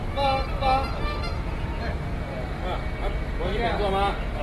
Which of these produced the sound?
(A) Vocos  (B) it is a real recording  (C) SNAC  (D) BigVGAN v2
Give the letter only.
B